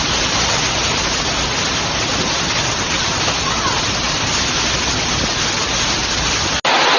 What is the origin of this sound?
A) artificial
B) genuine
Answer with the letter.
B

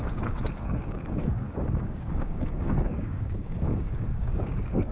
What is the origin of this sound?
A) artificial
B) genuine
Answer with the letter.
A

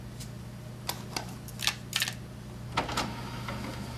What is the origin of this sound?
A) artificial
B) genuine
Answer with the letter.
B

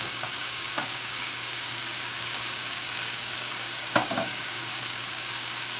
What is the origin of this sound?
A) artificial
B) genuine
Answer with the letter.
A